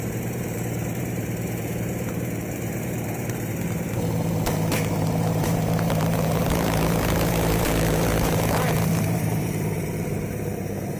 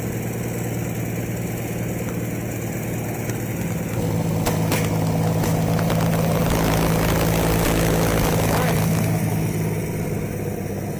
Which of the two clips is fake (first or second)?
first